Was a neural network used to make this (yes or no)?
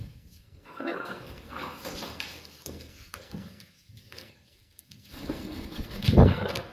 yes